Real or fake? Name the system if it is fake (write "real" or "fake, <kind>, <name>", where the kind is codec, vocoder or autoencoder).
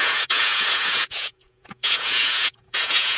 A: fake, vocoder, Vocos